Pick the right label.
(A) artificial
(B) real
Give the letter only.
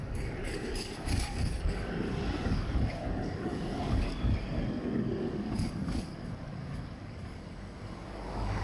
A